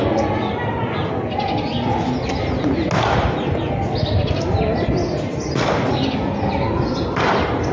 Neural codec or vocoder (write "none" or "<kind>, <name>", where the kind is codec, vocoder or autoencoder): none